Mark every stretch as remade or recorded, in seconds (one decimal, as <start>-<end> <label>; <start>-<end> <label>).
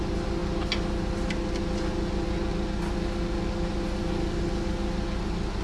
0.0-5.6 recorded